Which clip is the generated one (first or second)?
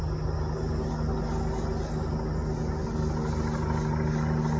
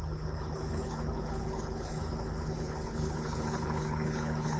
second